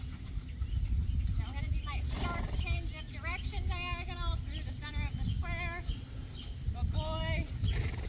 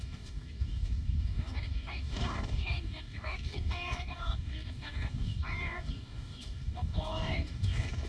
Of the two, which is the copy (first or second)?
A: second